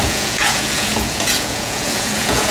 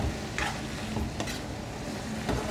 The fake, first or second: first